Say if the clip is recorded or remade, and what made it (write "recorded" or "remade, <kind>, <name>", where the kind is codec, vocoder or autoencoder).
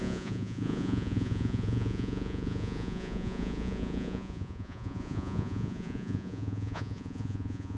remade, vocoder, Vocos